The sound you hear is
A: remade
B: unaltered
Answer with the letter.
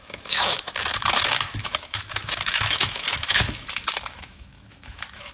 A